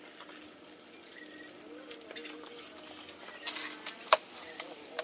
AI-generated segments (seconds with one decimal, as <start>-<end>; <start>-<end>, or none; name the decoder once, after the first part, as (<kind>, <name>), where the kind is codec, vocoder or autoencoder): none